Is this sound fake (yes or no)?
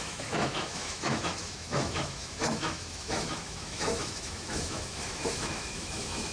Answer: yes